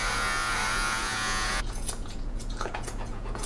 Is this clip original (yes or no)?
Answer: no